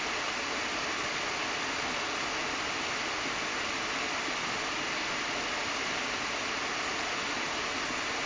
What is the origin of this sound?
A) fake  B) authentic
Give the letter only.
B